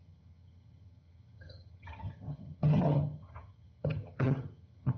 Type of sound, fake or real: fake